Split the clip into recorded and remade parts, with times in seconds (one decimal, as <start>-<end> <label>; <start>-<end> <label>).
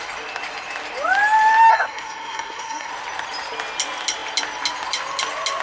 0.0-1.7 recorded; 1.7-2.9 remade; 2.9-5.6 recorded